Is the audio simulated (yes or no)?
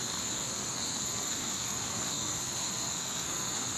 yes